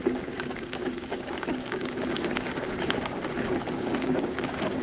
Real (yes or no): no